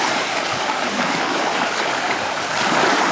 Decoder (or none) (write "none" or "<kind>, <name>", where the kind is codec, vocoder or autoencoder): codec, DAC